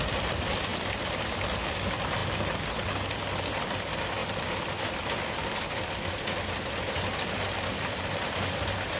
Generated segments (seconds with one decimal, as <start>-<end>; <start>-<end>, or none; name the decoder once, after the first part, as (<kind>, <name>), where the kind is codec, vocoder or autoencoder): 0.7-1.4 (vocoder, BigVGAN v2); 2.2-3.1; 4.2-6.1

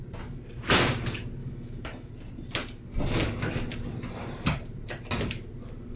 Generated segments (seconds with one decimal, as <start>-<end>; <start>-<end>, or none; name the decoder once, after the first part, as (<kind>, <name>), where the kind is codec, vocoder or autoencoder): 1.4-2.1 (autoencoder, DAC-VAE)

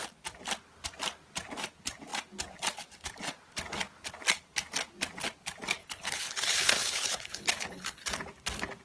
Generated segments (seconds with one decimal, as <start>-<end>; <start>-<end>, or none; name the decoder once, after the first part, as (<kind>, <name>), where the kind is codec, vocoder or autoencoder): 5.8-8.2 (codec, HILCodec)

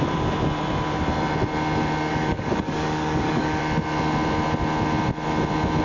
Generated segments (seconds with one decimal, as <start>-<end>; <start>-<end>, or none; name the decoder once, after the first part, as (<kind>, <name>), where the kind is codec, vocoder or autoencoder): 2.1-3.6 (codec, DAC)

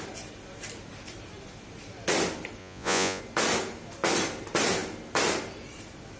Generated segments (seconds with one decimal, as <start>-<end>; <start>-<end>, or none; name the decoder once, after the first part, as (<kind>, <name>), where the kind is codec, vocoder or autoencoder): 2.6-3.2 (vocoder, Vocos)

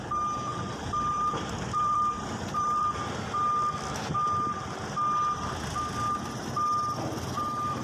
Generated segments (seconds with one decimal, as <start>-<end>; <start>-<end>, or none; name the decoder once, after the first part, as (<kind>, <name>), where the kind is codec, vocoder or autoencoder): 0.5-3.1 (vocoder, BigVGAN v2)